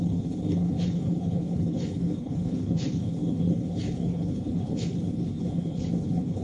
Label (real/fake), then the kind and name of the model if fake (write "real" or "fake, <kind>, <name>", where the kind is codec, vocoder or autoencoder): fake, codec, HILCodec